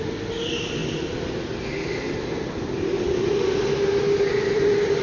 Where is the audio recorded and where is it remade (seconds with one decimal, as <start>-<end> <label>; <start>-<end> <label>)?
0.0-5.0 recorded